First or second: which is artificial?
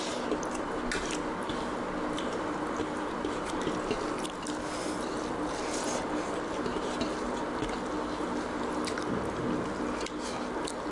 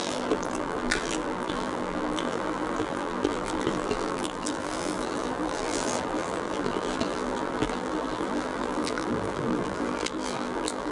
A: second